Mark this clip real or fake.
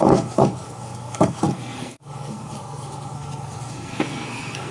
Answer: fake